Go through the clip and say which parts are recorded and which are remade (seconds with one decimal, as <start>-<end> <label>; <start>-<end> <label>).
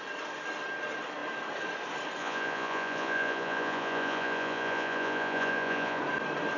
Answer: 0.0-2.2 recorded; 2.2-6.0 remade; 6.0-6.6 recorded